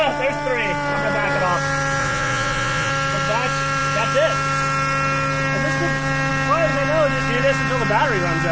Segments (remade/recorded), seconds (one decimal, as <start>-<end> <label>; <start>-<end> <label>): 0.0-2.0 recorded; 2.0-2.9 remade; 2.9-8.5 recorded